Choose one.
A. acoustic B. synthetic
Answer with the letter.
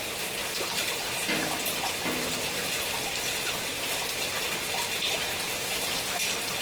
A